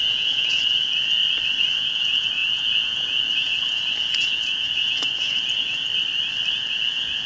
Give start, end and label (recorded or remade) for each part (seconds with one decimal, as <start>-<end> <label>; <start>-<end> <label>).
0.0-1.2 remade; 1.2-1.7 recorded; 1.7-5.9 remade; 5.9-6.5 recorded; 6.5-7.3 remade